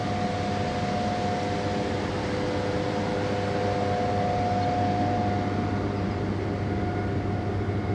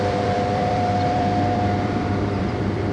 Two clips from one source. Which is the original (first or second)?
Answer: first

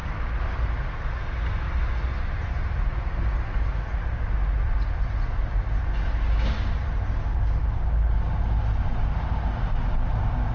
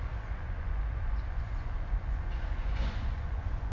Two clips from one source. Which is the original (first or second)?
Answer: first